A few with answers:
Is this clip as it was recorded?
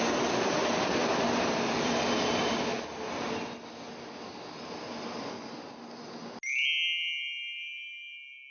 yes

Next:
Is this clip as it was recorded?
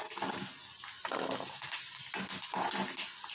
yes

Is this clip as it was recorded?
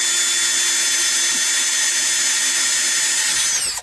yes